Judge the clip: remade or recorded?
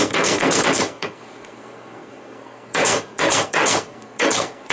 remade